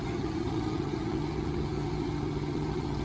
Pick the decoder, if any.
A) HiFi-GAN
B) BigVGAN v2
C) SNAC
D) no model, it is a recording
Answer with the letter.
A